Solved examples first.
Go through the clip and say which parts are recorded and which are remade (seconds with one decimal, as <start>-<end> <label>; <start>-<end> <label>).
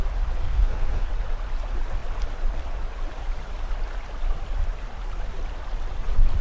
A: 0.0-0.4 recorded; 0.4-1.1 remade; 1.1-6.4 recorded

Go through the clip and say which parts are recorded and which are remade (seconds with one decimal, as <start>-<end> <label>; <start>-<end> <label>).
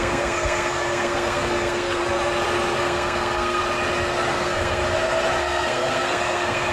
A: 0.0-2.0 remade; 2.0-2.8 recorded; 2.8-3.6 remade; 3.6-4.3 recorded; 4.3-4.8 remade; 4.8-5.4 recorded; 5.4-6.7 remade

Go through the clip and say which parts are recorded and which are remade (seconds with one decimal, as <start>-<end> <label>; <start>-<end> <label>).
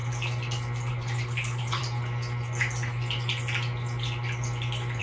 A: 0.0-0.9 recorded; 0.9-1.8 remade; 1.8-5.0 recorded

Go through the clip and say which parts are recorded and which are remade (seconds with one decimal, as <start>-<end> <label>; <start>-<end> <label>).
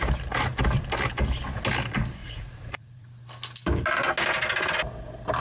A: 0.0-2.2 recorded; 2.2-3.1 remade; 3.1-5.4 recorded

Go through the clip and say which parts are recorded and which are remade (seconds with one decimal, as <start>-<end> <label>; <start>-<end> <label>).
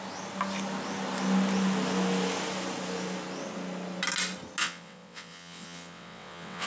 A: 0.0-4.6 recorded; 4.6-6.7 remade